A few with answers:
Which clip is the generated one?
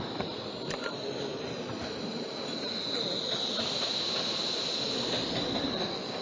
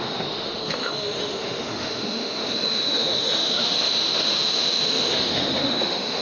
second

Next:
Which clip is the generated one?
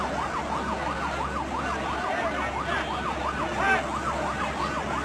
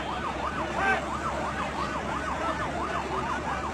second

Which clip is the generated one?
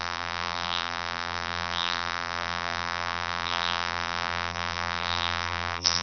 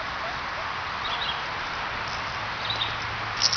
first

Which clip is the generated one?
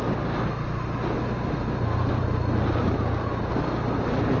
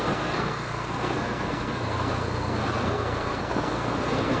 second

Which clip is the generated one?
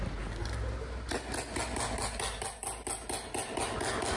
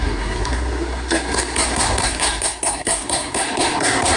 second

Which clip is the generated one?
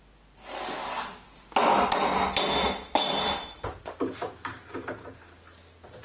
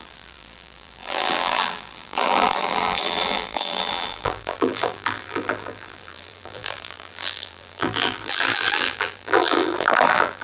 second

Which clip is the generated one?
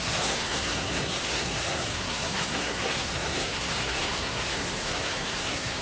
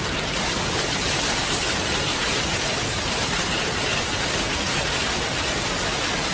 first